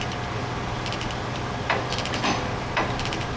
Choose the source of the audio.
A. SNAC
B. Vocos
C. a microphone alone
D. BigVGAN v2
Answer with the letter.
C